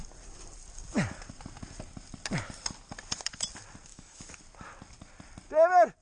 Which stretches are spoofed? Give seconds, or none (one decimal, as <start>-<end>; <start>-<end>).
3.9-4.4